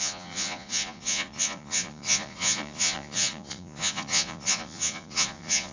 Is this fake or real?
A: fake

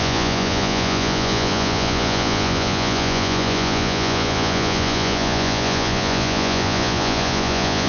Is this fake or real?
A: fake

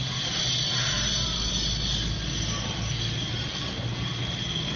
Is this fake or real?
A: real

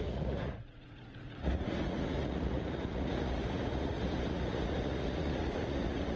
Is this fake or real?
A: fake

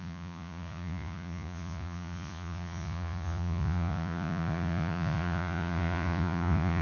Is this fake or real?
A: fake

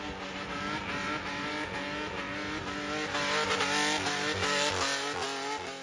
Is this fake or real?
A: real